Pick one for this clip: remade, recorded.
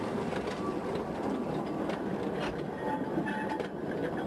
recorded